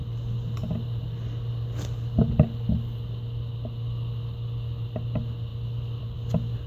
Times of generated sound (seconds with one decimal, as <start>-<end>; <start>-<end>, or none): 0.0-3.5; 5.5-6.0